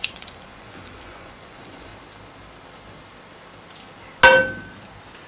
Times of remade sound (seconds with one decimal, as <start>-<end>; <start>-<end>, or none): 0.0-1.9